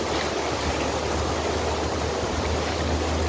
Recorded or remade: recorded